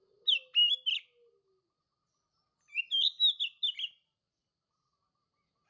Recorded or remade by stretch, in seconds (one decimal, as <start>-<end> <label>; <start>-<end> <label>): 0.0-5.7 recorded